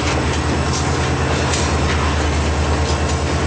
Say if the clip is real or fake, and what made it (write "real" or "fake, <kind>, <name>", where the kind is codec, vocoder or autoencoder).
real